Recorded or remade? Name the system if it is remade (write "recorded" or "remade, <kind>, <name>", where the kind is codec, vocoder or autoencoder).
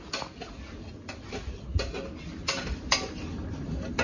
recorded